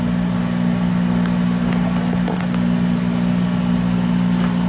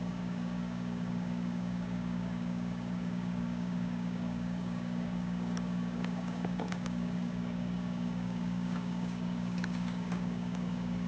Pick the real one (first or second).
first